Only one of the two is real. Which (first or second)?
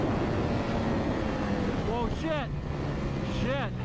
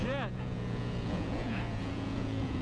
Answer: first